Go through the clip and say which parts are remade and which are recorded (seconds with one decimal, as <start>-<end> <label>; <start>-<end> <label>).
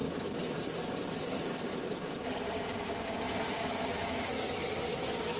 0.0-3.2 recorded; 3.2-5.4 remade